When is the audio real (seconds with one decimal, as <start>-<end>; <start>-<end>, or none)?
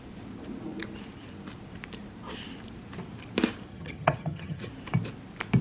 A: 0.0-3.7; 4.7-5.6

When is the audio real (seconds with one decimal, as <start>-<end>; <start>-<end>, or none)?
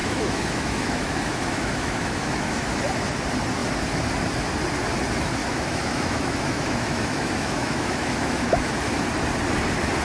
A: 2.8-5.4; 8.9-10.0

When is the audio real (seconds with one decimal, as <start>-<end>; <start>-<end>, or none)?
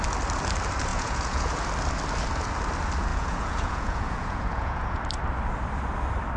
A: 0.0-0.9; 1.6-3.1; 5.0-6.4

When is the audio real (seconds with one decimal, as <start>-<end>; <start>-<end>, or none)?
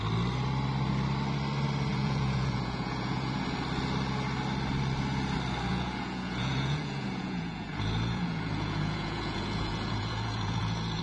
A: 0.0-1.9; 3.4-5.7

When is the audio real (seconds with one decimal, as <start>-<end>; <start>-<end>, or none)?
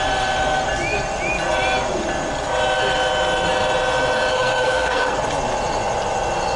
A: 0.0-4.3; 5.2-6.6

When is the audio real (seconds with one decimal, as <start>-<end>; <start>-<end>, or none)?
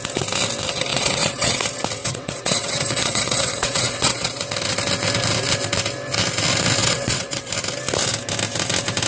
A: 0.0-0.9; 1.6-2.0; 4.3-6.8; 7.5-9.1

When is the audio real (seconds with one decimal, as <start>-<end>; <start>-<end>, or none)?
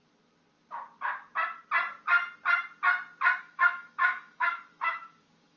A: 0.0-3.4